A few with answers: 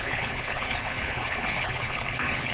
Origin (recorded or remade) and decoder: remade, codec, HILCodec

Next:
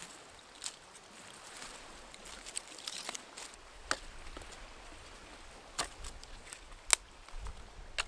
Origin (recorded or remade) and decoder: recorded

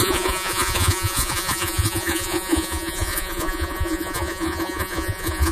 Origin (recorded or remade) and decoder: remade, vocoder, Vocos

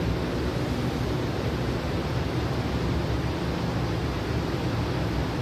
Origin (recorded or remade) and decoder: recorded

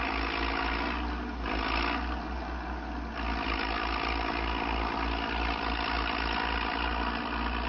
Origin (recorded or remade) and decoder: recorded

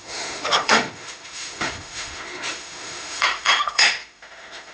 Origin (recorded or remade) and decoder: remade, autoencoder, DAC-VAE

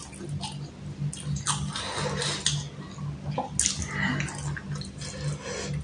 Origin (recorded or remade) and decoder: recorded